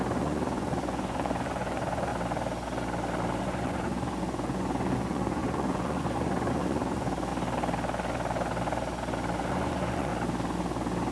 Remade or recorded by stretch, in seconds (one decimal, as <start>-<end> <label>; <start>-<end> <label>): 0.0-2.1 remade; 2.1-3.4 recorded; 3.4-7.3 remade; 7.3-9.5 recorded; 9.5-10.1 remade; 10.1-11.1 recorded